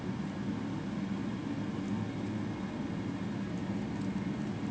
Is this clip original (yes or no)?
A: yes